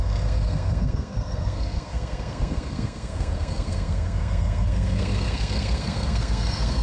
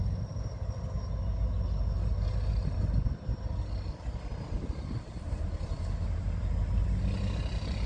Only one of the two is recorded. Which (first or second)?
second